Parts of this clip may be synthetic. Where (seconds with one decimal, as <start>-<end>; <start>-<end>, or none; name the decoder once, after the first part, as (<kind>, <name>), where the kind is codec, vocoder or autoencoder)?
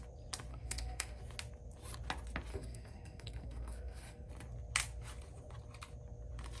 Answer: 0.5-1.2 (codec, SNAC); 2.5-4.3